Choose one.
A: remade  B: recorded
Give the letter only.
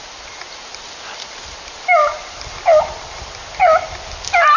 B